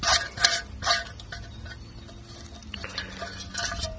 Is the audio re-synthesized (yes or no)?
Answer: no